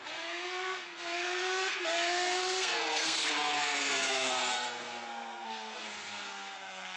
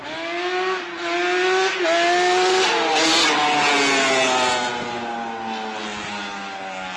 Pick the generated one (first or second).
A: first